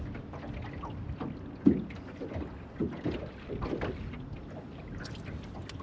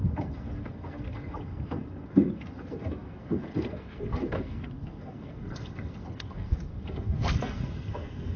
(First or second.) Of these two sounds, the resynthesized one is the second